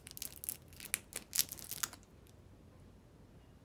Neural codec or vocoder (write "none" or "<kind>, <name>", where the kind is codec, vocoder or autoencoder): none